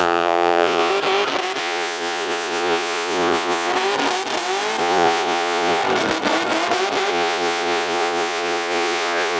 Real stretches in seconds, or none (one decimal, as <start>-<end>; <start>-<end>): 0.9-1.6; 3.7-4.8; 5.8-7.1